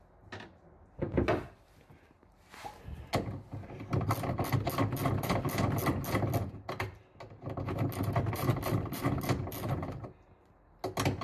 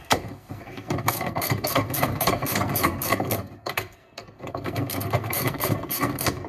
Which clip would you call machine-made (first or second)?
second